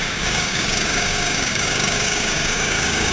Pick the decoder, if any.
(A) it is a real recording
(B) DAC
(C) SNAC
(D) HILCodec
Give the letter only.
B